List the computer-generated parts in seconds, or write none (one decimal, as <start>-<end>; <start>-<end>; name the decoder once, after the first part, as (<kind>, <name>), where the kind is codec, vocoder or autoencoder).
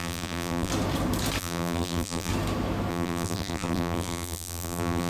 0.0-0.7 (vocoder, BigVGAN v2); 1.4-2.3; 2.9-5.1